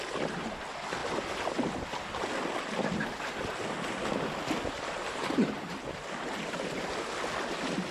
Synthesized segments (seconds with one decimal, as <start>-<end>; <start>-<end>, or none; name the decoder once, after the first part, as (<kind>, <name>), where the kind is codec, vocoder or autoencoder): none

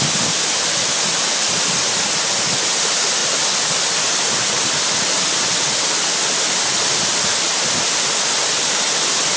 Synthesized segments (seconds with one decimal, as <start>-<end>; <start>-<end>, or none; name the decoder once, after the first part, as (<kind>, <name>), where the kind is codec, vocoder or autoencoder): 3.2-6.5 (vocoder, BigVGAN v2)

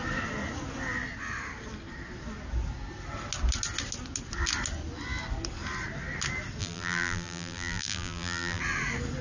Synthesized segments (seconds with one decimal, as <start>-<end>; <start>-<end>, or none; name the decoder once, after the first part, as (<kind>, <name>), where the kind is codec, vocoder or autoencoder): 6.6-8.6 (vocoder, BigVGAN v2)

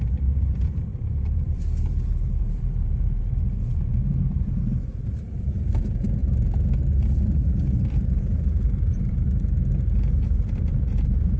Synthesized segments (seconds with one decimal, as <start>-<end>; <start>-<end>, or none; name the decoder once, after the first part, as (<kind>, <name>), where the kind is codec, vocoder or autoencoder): 0.0-6.2 (vocoder, BigVGAN v2); 7.9-11.4

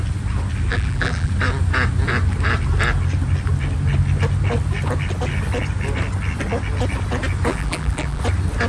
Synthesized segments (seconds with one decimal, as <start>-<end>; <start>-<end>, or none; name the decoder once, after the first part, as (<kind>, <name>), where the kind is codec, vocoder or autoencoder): 0.7-1.3 (vocoder, BigVGAN v2); 7.5-8.2

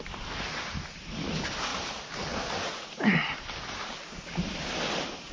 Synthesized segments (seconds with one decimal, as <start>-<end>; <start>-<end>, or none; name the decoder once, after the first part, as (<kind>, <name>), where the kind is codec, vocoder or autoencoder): none